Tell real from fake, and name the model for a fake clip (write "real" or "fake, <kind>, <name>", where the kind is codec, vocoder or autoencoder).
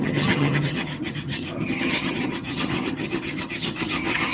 fake, vocoder, HiFi-GAN